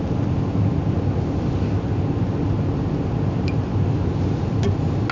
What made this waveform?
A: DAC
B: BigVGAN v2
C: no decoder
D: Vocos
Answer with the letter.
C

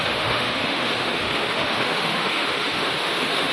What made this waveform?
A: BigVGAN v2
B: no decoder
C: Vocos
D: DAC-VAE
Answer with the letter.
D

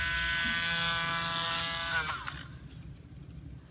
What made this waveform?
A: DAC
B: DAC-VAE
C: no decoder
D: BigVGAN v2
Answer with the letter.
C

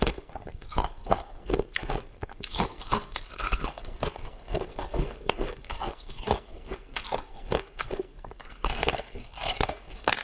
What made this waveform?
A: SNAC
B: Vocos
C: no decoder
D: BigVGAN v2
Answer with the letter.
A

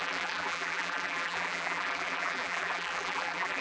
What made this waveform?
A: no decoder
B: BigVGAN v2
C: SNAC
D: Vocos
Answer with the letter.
B